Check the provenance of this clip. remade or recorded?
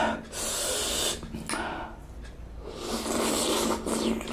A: recorded